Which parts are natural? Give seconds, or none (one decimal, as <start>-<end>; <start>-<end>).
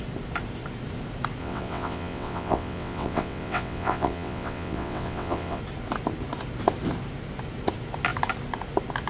0.0-1.4; 5.6-9.1